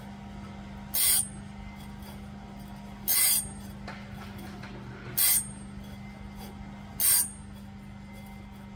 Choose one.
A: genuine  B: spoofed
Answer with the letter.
A